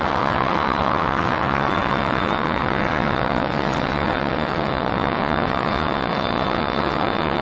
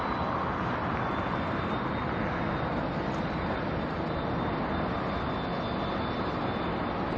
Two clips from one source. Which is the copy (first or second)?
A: first